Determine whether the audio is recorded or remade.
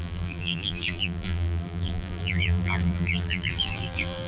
remade